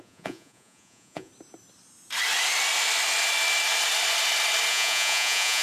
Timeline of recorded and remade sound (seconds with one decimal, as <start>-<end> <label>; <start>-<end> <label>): 0.0-1.3 remade; 1.3-4.7 recorded; 4.7-5.6 remade